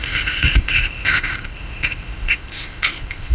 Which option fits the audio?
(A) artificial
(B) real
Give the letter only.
A